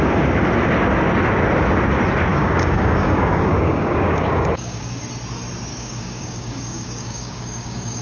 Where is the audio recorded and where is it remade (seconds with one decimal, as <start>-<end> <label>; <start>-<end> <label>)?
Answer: 0.0-2.3 recorded; 2.3-5.0 remade; 5.0-5.7 recorded; 5.7-8.0 remade